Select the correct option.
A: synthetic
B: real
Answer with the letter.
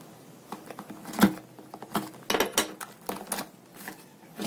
B